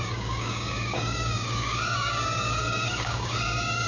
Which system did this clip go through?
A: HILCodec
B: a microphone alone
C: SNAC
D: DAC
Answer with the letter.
D